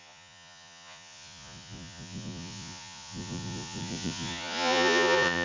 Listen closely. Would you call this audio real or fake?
fake